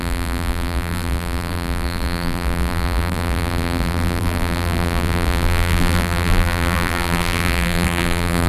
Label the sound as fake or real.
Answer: fake